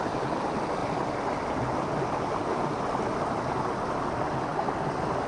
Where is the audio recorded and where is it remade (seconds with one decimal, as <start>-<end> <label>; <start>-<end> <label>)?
0.0-5.3 recorded